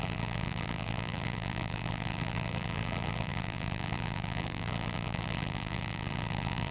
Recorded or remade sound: remade